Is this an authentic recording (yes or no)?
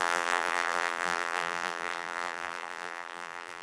no